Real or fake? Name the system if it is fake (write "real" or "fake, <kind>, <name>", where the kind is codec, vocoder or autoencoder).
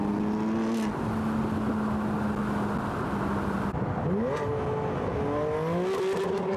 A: real